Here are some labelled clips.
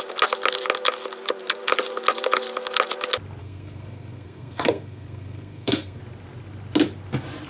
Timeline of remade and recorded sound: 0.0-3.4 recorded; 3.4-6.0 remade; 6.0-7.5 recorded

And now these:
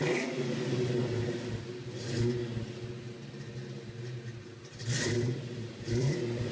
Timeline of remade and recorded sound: 0.0-1.0 remade; 1.0-4.6 recorded; 4.6-6.5 remade

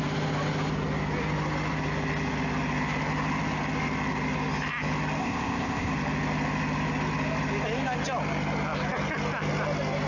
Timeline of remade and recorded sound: 0.0-5.2 recorded; 5.2-5.9 remade; 5.9-10.1 recorded